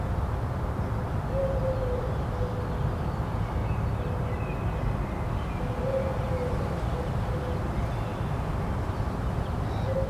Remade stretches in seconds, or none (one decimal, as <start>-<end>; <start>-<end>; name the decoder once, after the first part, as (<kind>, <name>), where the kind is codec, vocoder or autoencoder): none